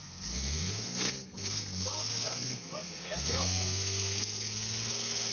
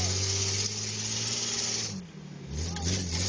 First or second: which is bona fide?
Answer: second